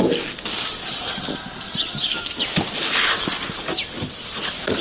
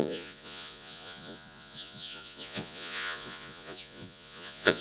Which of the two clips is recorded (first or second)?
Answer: first